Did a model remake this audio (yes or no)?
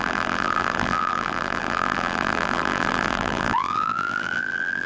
yes